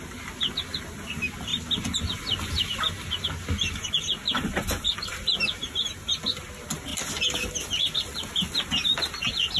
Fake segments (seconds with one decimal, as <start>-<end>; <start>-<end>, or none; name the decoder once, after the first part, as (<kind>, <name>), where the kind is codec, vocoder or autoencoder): none

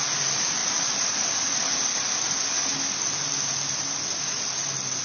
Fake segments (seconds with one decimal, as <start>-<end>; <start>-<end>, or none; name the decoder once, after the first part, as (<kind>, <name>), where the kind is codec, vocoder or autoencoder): none

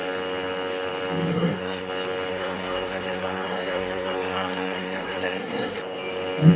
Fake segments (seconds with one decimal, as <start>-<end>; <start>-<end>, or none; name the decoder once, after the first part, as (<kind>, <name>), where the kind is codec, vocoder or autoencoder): 1.3-1.9 (codec, SNAC); 2.3-5.8

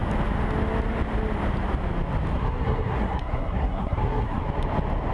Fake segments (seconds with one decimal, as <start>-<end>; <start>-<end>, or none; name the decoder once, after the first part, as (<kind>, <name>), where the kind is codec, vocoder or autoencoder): 2.3-4.4 (codec, SNAC)

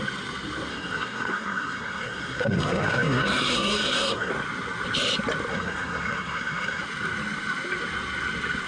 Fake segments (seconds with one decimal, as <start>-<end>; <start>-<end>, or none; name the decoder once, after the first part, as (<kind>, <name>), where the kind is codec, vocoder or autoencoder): 0.7-4.3 (codec, SNAC); 5.5-6.8

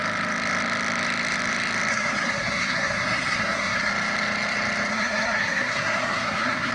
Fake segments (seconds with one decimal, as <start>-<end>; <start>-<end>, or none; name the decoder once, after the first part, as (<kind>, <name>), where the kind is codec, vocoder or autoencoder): 1.9-3.9 (codec, SNAC); 4.9-6.7

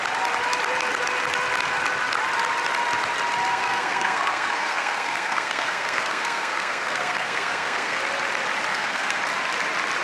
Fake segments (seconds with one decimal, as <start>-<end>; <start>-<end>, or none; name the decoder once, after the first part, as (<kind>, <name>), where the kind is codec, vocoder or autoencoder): 3.5-8.0 (codec, SNAC); 8.7-9.2